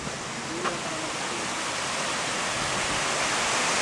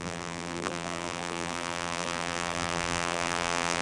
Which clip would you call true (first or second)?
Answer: first